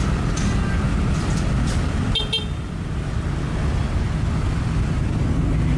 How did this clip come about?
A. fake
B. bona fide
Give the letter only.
B